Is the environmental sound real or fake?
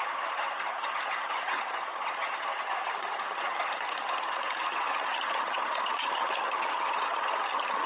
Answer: fake